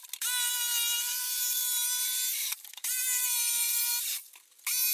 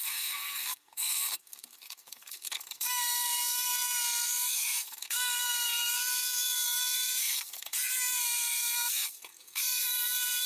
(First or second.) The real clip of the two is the first